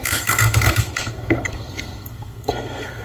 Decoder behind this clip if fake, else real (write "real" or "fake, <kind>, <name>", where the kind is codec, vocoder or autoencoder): fake, codec, SNAC